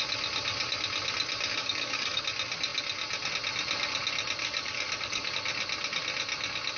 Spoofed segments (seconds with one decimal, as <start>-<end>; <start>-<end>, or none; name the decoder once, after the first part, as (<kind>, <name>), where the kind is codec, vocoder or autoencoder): 1.5-2.2 (codec, DAC); 4.4-5.3